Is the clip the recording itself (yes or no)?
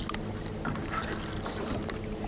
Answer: yes